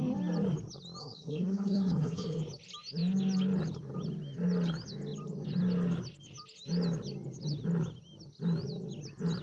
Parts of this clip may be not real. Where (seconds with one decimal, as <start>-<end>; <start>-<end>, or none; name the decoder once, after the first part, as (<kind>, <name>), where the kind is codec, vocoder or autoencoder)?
1.0-2.4 (codec, SNAC)